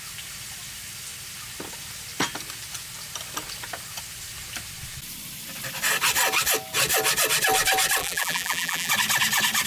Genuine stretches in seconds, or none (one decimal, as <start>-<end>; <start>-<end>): 0.0-8.0; 8.9-9.7

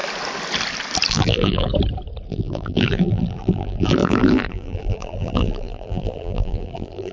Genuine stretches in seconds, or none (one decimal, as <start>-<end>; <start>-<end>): 0.0-1.1; 1.7-2.3

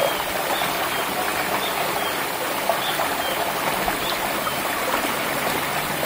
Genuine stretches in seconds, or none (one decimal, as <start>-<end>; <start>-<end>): 0.0-0.5; 1.3-5.0

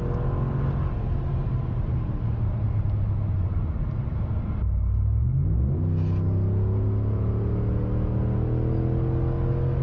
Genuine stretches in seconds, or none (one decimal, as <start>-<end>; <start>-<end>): 0.0-1.3; 3.8-9.8